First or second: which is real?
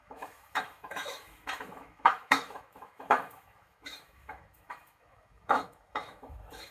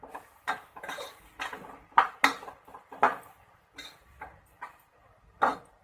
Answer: second